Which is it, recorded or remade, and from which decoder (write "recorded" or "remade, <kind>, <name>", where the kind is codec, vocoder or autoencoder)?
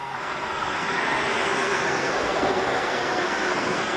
remade, codec, SNAC